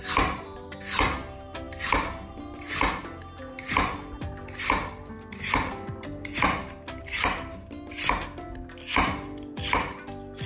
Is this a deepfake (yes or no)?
no